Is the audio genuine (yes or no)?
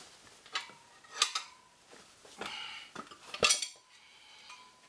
yes